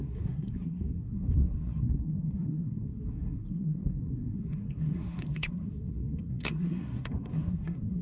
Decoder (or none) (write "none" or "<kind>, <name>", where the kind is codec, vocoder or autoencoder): codec, SNAC